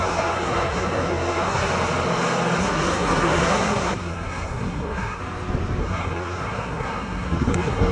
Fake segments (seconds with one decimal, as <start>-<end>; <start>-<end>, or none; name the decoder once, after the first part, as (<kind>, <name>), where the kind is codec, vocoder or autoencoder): 0.0-1.7 (codec, SNAC); 2.6-5.2; 5.8-7.9